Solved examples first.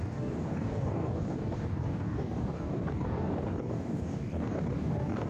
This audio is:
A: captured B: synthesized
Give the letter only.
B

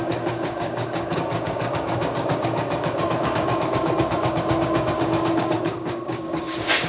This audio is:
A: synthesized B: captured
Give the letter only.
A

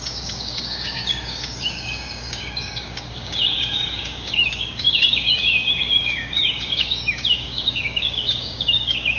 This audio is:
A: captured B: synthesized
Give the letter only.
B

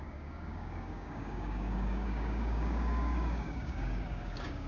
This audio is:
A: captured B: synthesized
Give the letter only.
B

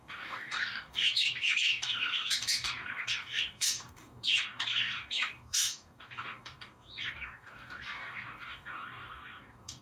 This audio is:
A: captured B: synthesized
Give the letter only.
B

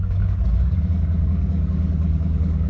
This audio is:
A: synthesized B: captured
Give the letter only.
A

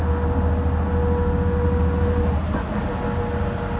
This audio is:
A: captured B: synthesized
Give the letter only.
A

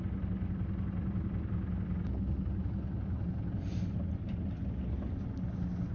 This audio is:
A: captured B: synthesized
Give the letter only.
A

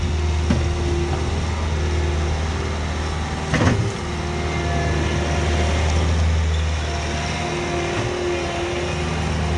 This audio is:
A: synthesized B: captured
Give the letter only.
B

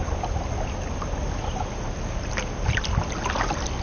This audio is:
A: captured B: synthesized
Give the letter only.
A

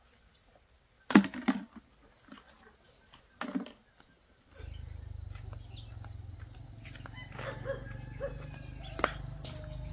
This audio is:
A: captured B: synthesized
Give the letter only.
A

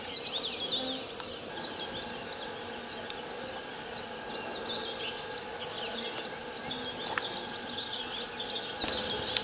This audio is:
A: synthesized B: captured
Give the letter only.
B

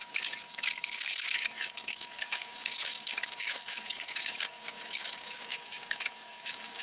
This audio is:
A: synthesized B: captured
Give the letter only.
A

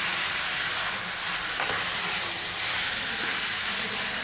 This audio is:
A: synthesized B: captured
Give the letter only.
B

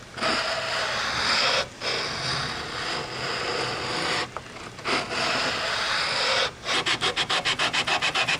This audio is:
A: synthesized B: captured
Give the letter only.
B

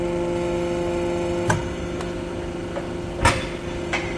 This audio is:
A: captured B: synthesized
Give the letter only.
A